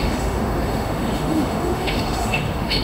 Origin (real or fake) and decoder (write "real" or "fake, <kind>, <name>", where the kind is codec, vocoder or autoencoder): fake, autoencoder, DAC-VAE